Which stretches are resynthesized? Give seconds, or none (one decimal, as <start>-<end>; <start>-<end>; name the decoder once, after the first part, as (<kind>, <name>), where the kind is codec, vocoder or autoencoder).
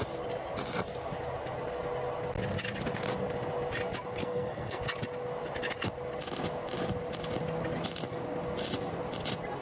4.2-4.8 (codec, SNAC)